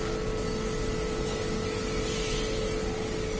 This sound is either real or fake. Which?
real